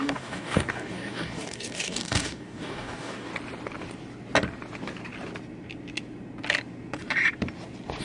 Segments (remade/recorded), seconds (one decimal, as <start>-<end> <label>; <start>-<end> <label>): 0.0-3.3 remade; 3.3-8.0 recorded